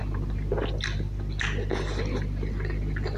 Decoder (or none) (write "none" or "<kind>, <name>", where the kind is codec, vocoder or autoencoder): none